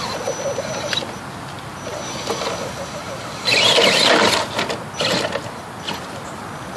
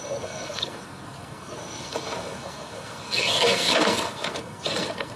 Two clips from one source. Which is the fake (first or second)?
second